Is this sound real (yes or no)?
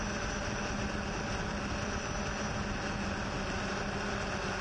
yes